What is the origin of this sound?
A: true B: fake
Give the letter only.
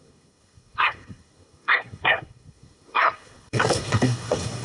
B